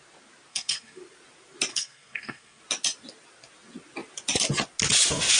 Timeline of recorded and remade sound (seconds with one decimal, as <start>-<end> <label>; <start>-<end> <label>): 0.0-0.5 recorded; 0.5-1.0 remade; 1.0-1.7 recorded; 1.7-2.6 remade; 2.6-5.4 recorded